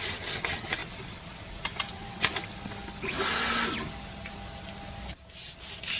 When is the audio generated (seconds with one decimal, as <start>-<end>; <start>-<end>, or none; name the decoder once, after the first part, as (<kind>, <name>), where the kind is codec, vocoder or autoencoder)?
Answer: 0.0-0.8 (vocoder, WaveNeXt); 1.9-2.3